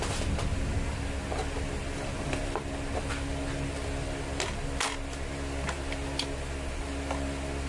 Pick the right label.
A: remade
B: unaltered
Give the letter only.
B